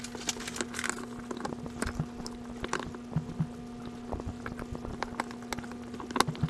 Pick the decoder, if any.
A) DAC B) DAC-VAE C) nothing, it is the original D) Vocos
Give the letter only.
C